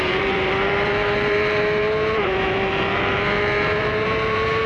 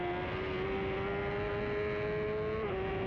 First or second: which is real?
second